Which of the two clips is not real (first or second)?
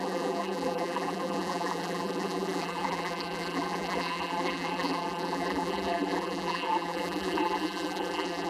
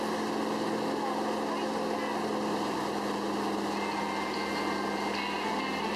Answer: first